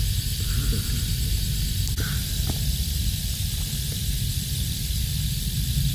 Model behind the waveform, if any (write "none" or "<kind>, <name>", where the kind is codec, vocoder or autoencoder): none